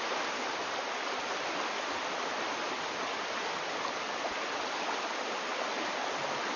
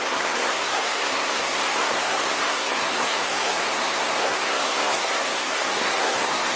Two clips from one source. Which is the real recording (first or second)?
first